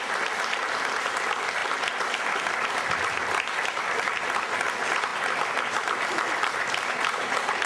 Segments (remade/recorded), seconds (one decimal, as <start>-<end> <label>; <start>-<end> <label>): 0.0-7.7 recorded